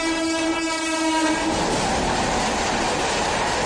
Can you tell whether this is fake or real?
real